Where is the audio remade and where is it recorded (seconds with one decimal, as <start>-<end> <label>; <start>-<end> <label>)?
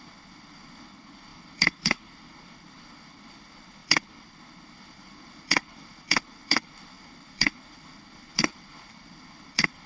0.0-9.9 remade